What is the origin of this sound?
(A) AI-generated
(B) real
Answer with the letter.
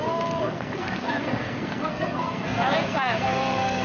A